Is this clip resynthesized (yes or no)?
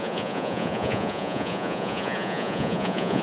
yes